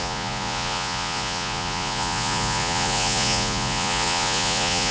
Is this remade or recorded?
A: remade